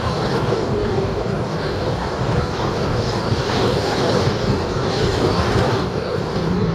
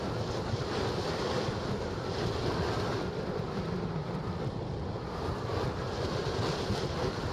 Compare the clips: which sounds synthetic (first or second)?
first